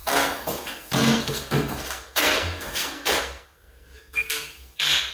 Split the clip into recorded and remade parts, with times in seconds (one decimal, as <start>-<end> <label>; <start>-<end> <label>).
0.0-5.1 remade